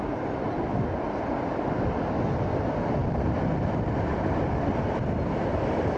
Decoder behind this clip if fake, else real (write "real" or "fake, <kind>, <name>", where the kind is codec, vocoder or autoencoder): real